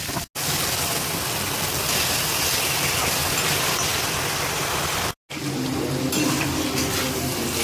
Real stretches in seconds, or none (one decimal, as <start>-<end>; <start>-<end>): 0.0-7.6